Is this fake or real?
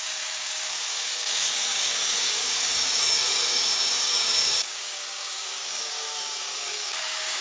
fake